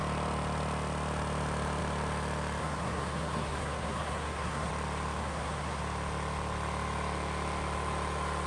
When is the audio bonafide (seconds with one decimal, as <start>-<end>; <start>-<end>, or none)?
0.0-2.6; 4.7-5.2; 5.8-8.5